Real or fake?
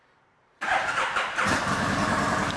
fake